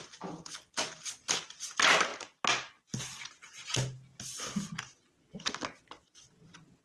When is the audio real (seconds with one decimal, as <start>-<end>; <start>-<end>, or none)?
0.0-6.8